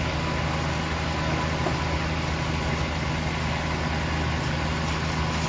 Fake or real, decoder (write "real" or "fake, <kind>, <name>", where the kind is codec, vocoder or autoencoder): real